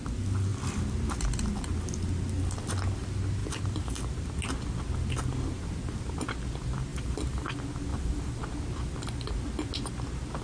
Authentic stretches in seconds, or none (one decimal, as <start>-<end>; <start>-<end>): 0.0-3.4; 4.1-6.9; 7.5-7.9; 8.4-10.4